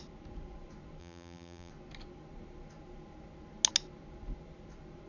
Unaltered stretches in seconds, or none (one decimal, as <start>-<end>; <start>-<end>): 0.0-1.0; 1.7-5.1